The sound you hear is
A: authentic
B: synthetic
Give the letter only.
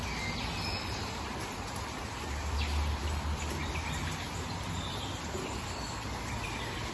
A